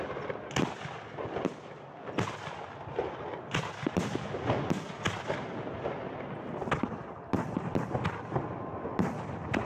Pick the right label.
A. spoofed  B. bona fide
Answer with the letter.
B